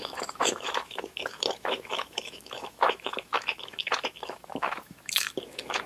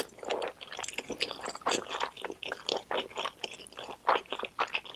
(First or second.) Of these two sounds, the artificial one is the first